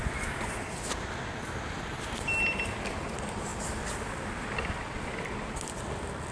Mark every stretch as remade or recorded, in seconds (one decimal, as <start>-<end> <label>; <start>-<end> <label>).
0.0-1.1 remade; 1.1-6.3 recorded

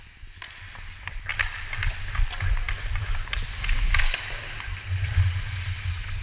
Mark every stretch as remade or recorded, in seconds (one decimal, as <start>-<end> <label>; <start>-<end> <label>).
0.0-6.2 recorded